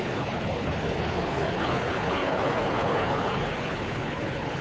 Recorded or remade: remade